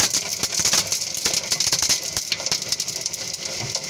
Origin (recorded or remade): remade